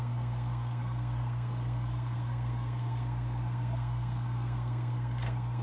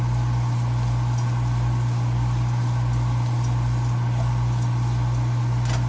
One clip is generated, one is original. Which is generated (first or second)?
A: first